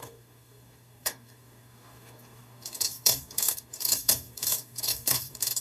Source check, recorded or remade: remade